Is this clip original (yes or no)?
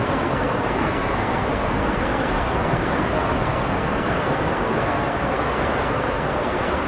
no